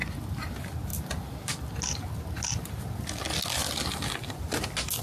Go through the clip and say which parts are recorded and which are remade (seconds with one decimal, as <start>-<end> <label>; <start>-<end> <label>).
0.0-0.9 recorded; 0.9-2.1 remade; 2.1-3.6 recorded; 3.6-4.1 remade; 4.1-5.0 recorded